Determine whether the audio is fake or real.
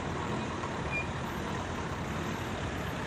fake